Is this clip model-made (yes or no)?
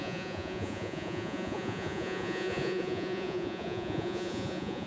yes